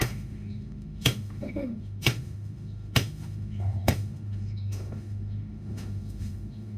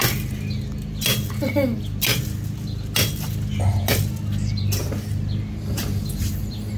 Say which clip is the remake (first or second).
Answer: first